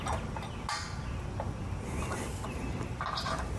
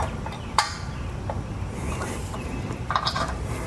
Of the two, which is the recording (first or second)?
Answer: first